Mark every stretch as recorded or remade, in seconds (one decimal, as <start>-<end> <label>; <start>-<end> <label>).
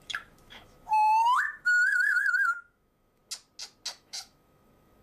0.0-3.2 remade; 3.2-3.9 recorded; 3.9-5.0 remade